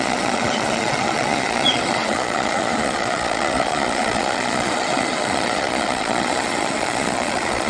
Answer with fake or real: fake